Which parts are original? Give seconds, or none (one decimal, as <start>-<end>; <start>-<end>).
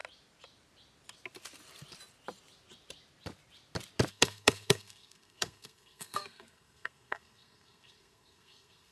0.0-4.1